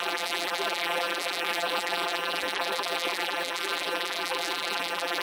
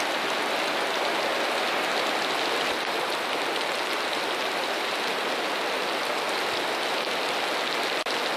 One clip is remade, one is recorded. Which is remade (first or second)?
first